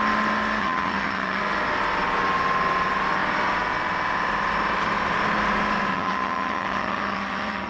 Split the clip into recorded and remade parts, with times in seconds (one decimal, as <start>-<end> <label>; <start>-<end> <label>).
0.0-0.6 recorded; 0.6-1.4 remade; 1.4-5.9 recorded; 5.9-7.7 remade